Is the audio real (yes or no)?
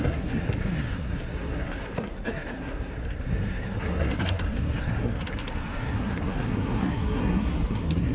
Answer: no